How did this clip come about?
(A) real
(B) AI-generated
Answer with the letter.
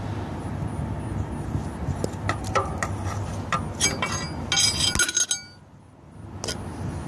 A